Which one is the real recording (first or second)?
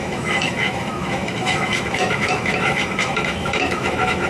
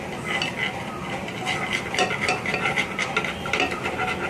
second